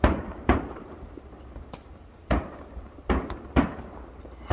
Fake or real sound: fake